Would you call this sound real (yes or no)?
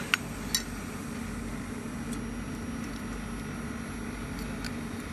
yes